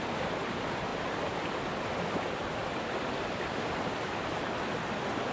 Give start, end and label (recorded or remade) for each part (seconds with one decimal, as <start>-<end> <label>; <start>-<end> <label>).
0.0-5.3 recorded